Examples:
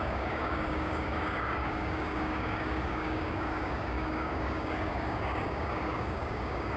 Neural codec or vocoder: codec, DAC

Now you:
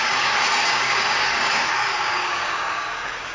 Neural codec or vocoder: codec, DAC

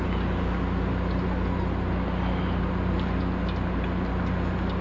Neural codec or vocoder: none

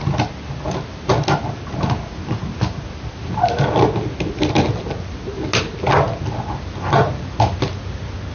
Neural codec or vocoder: none